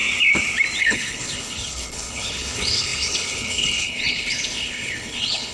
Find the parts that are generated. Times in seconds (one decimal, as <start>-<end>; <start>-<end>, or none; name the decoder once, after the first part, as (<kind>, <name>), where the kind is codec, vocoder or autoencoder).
0.8-5.5 (codec, HILCodec)